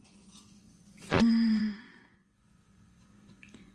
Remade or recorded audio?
remade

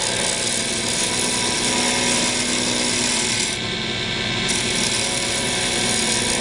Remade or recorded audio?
recorded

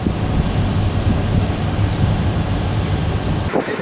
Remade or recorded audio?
recorded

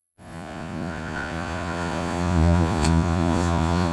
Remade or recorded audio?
remade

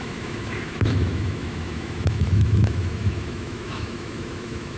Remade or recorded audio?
remade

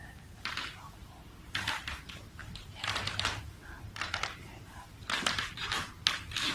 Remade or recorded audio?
remade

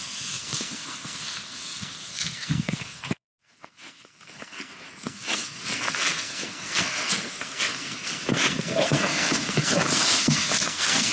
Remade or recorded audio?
remade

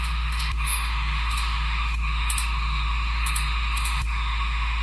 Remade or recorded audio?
remade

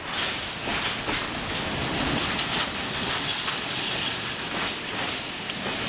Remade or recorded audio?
recorded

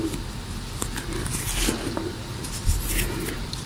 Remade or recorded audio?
recorded